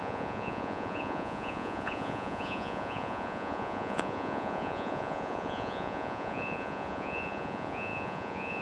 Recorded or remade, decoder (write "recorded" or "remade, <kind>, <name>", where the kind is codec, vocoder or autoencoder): remade, vocoder, Vocos